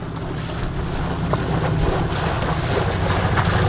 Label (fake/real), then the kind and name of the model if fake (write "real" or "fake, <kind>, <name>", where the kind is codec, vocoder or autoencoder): real